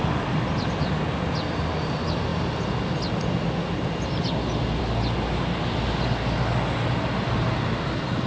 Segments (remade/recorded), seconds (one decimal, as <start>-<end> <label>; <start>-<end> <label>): 0.0-8.3 recorded